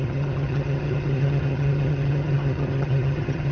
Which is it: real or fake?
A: fake